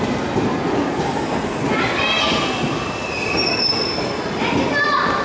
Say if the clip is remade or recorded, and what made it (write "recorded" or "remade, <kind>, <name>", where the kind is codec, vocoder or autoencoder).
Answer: remade, vocoder, BigVGAN v2